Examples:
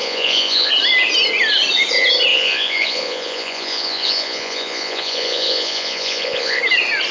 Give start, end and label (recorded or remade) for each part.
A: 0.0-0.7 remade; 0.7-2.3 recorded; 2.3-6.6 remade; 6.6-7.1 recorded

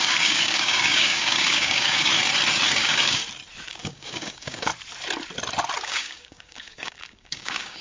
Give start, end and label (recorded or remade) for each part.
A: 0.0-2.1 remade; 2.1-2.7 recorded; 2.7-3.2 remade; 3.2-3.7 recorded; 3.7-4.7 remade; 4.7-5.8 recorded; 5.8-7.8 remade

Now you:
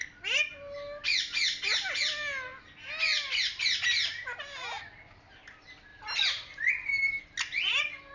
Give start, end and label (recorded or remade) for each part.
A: 0.0-5.9 recorded; 5.9-7.2 remade; 7.2-8.1 recorded

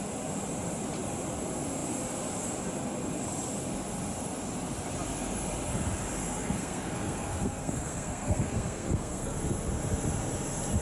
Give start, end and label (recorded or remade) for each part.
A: 0.0-6.2 recorded; 6.2-9.4 remade; 9.4-10.8 recorded